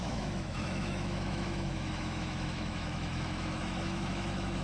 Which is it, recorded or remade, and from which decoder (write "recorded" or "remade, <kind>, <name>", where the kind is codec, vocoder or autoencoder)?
remade, autoencoder, DAC-VAE